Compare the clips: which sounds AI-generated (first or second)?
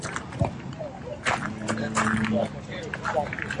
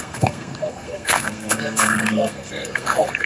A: second